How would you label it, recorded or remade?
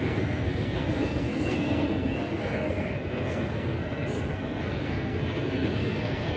remade